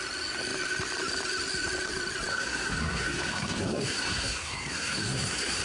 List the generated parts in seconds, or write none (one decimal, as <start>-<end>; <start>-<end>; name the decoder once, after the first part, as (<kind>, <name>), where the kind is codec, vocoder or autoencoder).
2.3-5.6 (codec, SNAC)